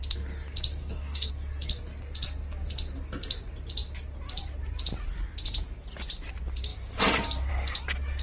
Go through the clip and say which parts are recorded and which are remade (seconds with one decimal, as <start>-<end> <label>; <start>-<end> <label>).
0.0-0.8 recorded; 0.8-1.3 remade; 1.3-8.2 recorded

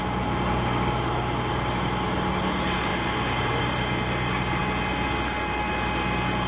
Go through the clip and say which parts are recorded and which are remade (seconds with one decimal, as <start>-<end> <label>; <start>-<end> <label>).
0.0-6.5 recorded

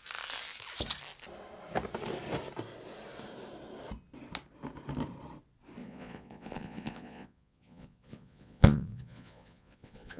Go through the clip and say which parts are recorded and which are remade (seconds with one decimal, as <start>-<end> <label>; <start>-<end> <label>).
0.0-5.8 recorded; 5.8-10.2 remade

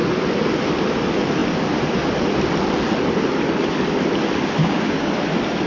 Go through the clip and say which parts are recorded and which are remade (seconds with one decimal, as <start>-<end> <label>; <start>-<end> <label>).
0.0-4.6 recorded; 4.6-5.1 remade; 5.1-5.7 recorded